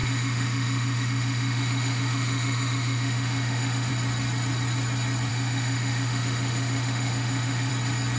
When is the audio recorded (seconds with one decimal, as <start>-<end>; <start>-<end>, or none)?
3.9-5.3; 7.7-8.2